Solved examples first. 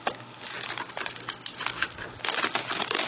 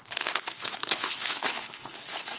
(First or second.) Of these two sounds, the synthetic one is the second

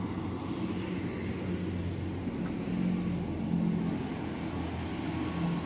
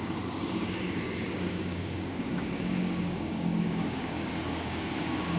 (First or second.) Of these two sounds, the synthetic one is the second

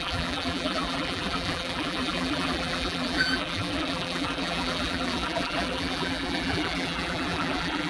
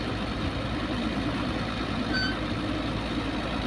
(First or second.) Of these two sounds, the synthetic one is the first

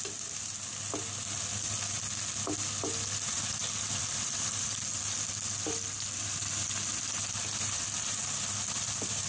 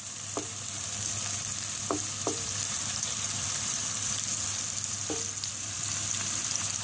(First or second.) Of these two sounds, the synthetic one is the second